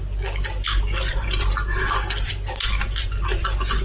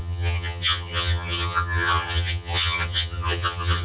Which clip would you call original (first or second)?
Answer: first